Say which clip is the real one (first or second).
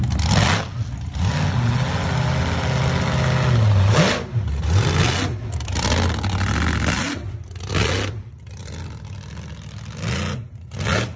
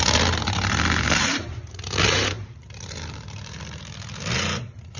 first